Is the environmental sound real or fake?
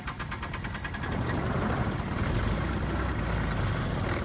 real